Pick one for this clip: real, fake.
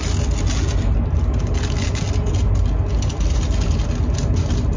real